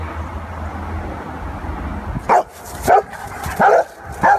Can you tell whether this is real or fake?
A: real